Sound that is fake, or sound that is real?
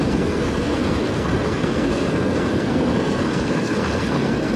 fake